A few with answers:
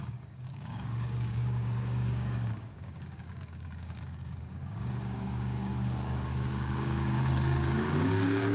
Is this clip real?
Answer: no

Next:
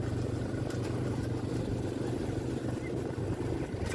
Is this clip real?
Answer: yes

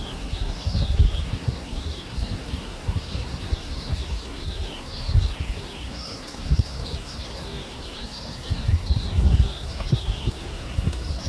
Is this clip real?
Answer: no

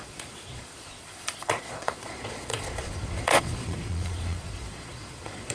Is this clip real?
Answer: no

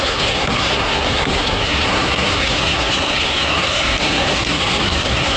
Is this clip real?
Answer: no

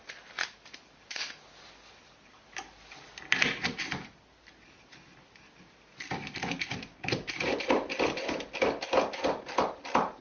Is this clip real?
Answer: yes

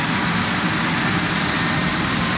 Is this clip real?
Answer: yes